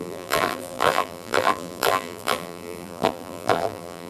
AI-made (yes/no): yes